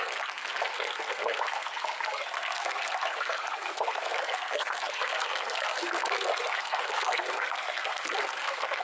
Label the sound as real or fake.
fake